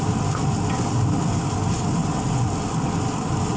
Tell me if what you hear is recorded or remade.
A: recorded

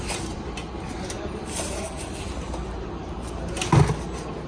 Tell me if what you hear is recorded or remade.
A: recorded